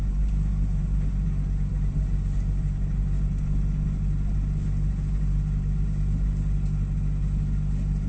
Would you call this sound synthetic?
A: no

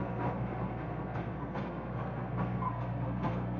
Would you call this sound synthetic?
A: yes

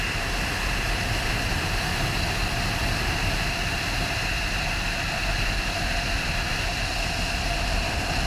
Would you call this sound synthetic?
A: no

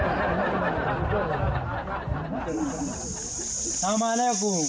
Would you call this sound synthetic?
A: no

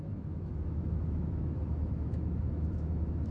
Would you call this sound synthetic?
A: yes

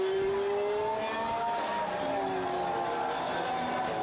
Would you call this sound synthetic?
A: no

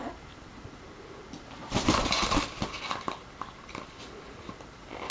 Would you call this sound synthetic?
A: no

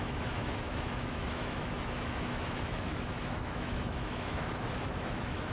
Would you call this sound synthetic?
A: yes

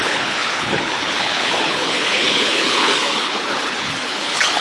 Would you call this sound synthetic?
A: yes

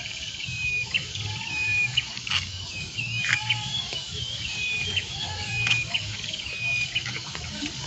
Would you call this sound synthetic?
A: yes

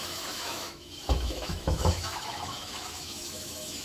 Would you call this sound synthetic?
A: yes